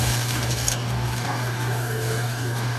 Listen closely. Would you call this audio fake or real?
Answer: fake